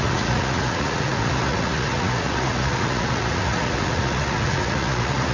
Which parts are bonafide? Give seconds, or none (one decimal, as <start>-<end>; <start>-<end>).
none